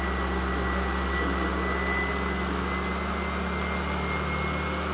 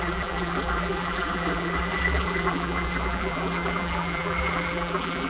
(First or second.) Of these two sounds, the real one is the first